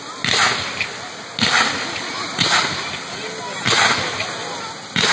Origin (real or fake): real